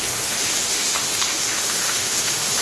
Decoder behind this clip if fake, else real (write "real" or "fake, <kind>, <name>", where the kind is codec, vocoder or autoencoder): fake, autoencoder, DAC-VAE